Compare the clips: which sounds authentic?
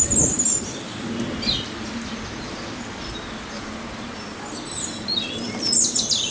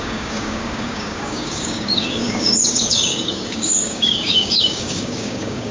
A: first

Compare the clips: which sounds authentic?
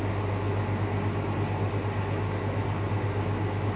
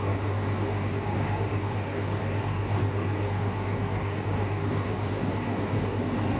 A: first